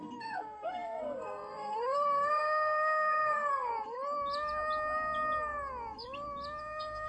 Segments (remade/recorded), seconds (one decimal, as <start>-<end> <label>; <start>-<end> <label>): 0.0-3.7 remade; 3.7-6.6 recorded; 6.6-7.1 remade